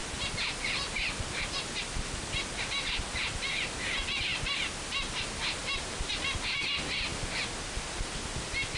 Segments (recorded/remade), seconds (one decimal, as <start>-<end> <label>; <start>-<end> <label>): 0.0-5.6 recorded; 5.6-6.1 remade; 6.1-8.8 recorded